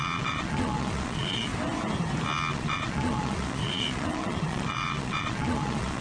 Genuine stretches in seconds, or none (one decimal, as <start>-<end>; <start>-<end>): 1.5-2.5